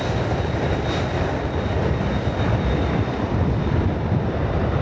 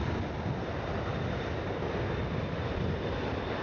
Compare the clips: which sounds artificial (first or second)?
first